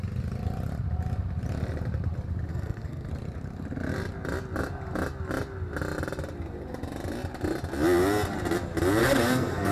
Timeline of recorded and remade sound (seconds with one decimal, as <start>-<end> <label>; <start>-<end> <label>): 0.0-2.5 recorded; 2.5-3.1 remade; 3.1-9.0 recorded; 9.0-9.7 remade